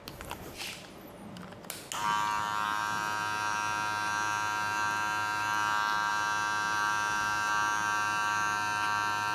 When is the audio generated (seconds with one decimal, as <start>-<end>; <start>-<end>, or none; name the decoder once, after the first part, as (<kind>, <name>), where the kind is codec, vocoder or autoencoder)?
none